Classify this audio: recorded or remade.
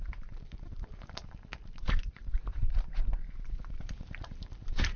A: remade